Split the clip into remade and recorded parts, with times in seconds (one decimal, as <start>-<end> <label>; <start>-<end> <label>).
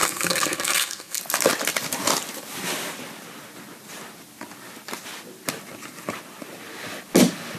0.0-1.2 remade; 1.2-7.6 recorded